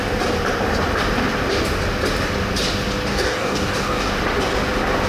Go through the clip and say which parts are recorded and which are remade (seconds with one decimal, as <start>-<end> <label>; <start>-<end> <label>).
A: 0.0-3.1 recorded; 3.1-4.1 remade; 4.1-5.1 recorded